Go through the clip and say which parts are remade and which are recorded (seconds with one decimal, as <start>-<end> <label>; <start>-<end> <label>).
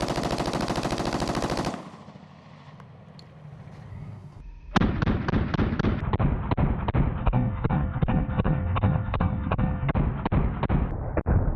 0.0-3.9 recorded; 3.9-4.4 remade; 4.4-7.2 recorded; 7.2-9.9 remade; 9.9-11.6 recorded